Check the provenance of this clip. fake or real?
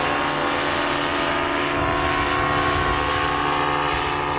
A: real